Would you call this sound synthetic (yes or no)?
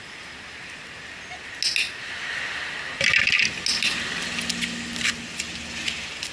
no